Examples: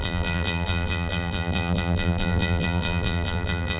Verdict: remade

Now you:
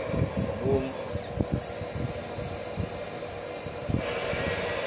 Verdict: recorded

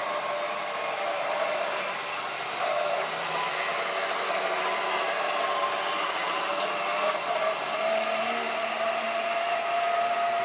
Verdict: recorded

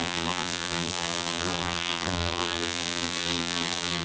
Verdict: remade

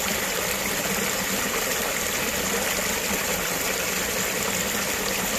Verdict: recorded